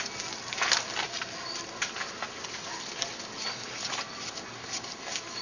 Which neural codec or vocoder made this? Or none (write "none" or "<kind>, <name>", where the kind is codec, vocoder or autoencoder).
none